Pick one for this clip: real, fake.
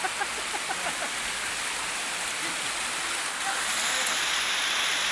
real